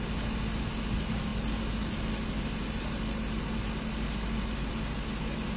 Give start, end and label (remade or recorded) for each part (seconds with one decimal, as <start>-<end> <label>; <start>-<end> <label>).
0.0-5.6 recorded